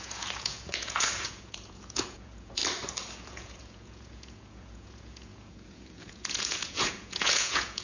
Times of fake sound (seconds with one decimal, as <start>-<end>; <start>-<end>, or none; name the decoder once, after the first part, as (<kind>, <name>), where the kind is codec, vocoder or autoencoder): 0.0-2.6 (vocoder, Vocos); 3.2-7.8